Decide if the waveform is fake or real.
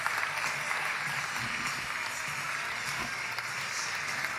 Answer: real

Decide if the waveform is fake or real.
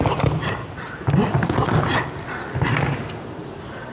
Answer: real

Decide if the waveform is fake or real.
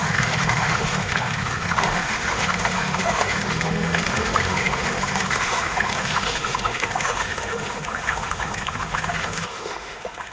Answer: fake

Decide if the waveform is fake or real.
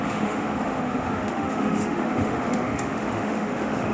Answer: fake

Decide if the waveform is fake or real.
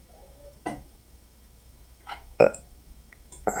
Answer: fake